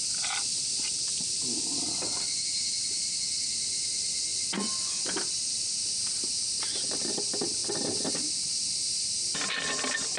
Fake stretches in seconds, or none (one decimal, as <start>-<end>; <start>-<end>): none